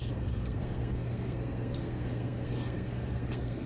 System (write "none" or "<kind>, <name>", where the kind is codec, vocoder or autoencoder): codec, SNAC